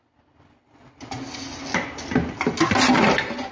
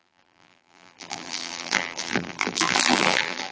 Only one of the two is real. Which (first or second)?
first